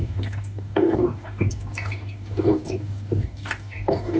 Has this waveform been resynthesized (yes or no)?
yes